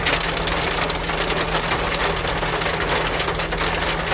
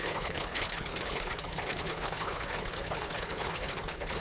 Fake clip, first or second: second